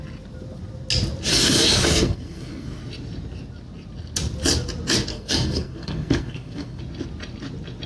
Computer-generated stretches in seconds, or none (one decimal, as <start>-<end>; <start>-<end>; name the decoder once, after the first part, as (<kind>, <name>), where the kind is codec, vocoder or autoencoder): 1.3-2.8 (codec, SNAC); 5.1-6.8